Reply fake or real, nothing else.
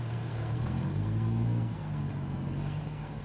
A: fake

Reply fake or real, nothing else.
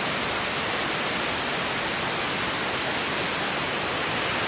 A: real